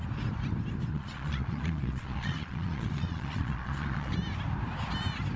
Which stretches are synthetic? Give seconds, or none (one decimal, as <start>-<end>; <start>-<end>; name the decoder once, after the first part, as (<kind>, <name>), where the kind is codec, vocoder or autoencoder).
0.9-4.1 (vocoder, Vocos)